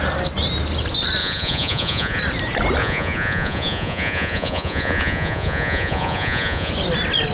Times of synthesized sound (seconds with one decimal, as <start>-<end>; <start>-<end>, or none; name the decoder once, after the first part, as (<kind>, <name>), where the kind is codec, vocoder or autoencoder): 1.2-2.2 (vocoder, Vocos); 2.8-6.7